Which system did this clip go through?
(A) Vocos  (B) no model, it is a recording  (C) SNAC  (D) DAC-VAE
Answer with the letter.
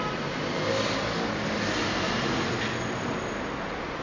B